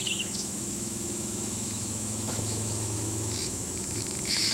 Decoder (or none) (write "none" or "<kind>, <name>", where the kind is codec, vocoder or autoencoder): autoencoder, DAC-VAE